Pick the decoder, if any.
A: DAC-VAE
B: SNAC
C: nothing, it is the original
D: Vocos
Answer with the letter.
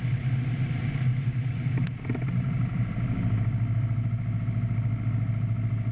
C